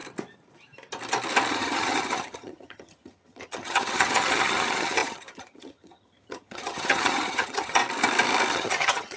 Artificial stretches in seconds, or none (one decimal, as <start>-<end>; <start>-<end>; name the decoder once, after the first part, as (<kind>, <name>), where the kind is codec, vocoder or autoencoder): 1.5-7.8 (vocoder, HiFi-GAN); 8.5-9.2